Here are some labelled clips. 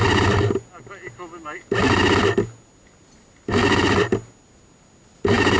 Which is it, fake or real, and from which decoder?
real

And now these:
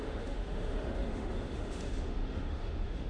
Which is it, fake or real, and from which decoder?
fake, autoencoder, DAC-VAE